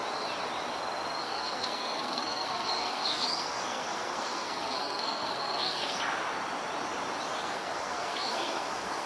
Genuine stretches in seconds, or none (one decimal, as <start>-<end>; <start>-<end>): 0.0-1.2; 6.0-7.4